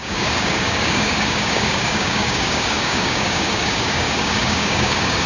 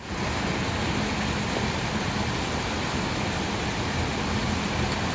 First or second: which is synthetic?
first